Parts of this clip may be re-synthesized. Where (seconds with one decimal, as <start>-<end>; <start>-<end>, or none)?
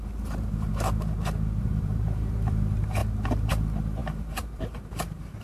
0.0-0.7; 1.6-3.0; 3.5-5.4